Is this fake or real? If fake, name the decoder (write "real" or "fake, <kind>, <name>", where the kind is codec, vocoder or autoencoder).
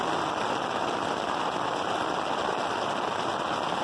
real